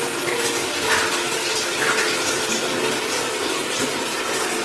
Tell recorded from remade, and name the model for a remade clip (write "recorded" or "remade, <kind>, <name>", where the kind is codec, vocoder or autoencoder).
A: remade, vocoder, BigVGAN v2